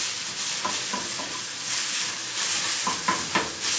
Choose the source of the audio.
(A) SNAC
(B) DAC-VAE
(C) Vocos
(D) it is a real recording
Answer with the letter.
D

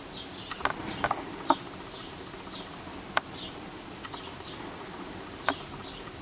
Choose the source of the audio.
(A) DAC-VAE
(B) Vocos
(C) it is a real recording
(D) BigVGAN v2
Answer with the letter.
C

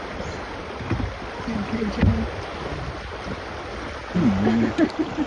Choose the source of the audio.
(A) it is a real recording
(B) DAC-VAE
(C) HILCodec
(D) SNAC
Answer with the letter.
A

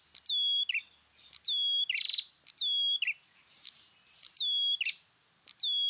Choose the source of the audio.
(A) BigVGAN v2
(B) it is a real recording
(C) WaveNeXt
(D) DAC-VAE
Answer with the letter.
B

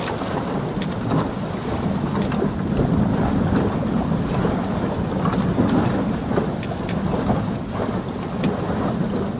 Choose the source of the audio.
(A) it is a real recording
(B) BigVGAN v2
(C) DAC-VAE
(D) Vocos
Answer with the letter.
A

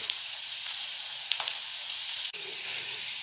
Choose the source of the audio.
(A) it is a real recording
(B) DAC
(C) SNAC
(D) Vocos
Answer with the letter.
D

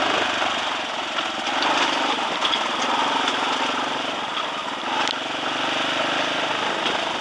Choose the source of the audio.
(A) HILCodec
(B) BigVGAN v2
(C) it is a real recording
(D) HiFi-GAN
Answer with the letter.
C